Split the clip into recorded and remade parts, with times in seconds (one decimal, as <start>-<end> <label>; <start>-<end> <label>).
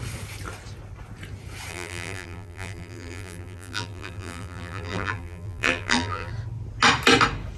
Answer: 0.0-1.7 recorded; 1.7-6.3 remade; 6.3-7.6 recorded